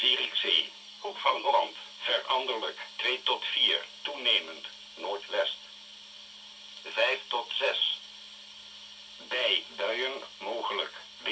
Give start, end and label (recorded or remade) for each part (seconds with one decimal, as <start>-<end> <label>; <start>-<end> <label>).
0.0-0.8 recorded; 0.8-1.5 remade; 1.5-11.3 recorded

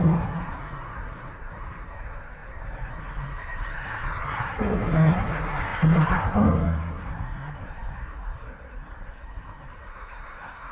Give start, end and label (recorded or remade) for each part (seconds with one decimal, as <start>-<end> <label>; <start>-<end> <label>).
0.0-10.7 remade